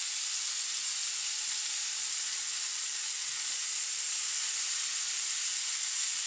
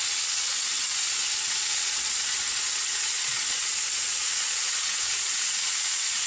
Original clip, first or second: first